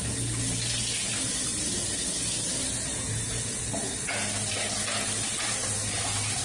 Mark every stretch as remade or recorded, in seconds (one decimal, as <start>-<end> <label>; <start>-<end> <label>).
0.0-6.4 recorded